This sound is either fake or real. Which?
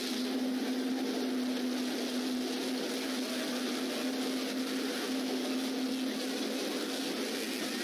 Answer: real